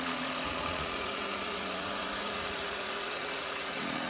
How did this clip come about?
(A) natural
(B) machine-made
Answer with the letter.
B